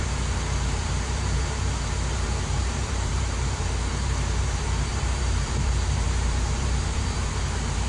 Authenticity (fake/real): fake